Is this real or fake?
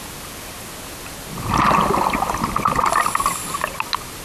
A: real